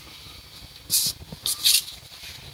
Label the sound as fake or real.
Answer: real